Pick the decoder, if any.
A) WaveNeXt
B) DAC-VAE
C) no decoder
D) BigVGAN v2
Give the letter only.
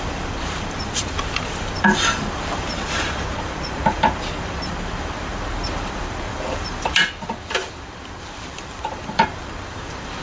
D